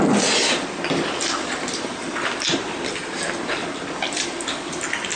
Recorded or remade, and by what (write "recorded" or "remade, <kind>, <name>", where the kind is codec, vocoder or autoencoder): remade, vocoder, BigVGAN v2